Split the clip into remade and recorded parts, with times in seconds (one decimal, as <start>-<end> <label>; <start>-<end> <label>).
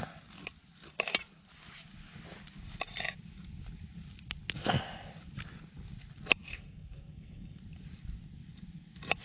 0.0-6.5 recorded; 6.5-7.6 remade; 7.6-9.2 recorded